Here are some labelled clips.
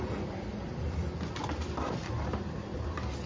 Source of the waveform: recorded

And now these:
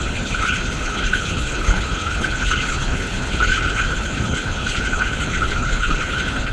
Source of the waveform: remade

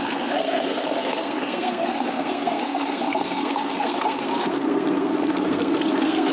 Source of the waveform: remade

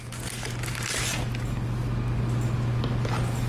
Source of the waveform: recorded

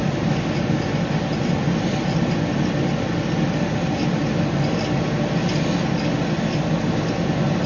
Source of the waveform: recorded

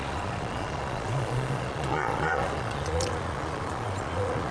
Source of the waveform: remade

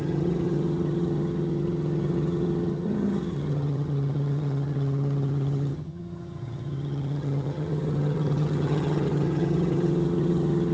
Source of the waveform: remade